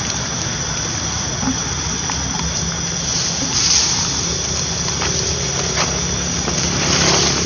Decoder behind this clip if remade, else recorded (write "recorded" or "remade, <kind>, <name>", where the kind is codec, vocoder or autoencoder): recorded